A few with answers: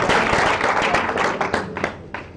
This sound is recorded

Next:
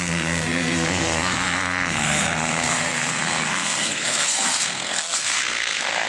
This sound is remade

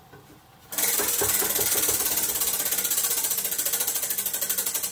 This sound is recorded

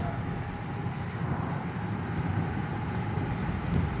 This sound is recorded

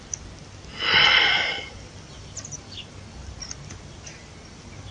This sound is recorded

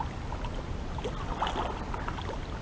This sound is recorded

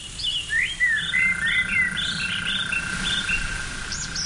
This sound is recorded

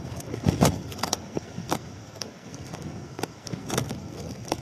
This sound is remade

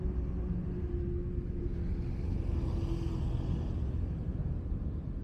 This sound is recorded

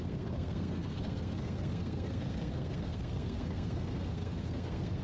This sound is remade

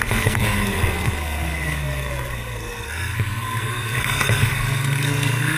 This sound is remade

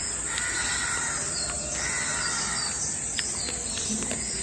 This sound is recorded